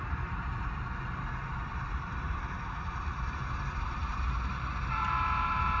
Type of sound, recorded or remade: remade